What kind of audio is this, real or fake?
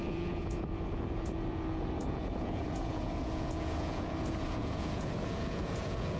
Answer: fake